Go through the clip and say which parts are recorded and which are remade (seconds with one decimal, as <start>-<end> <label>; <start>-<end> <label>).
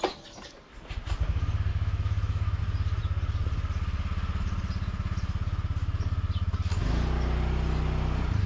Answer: 0.0-1.7 recorded; 1.7-2.6 remade; 2.6-8.5 recorded